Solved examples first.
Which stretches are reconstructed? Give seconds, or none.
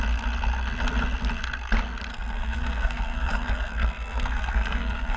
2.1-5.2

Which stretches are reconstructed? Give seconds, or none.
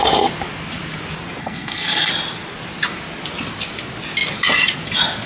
1.4-2.1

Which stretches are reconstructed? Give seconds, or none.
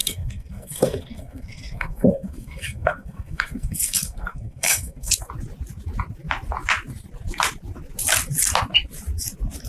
0.0-5.1